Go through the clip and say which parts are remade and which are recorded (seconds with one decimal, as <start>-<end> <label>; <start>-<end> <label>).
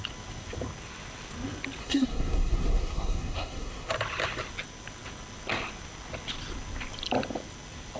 0.0-1.8 recorded; 1.8-3.9 remade; 3.9-8.0 recorded